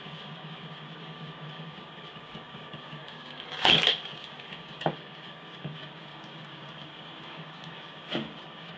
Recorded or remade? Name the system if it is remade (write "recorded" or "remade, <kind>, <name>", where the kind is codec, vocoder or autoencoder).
remade, codec, DAC